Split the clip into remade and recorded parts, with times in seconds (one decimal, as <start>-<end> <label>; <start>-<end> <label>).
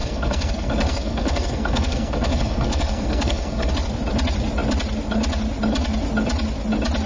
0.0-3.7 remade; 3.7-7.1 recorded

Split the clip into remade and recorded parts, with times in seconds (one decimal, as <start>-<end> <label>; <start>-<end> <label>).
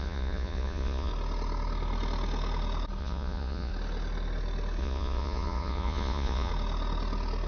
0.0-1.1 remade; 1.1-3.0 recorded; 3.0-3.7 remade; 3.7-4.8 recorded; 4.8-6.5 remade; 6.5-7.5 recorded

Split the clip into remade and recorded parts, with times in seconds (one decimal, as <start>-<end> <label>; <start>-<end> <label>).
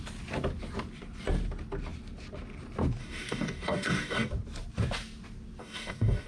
0.0-3.0 recorded; 3.0-4.3 remade; 4.3-5.6 recorded; 5.6-6.3 remade